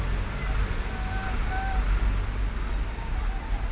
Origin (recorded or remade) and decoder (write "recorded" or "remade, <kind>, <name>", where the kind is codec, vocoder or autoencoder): recorded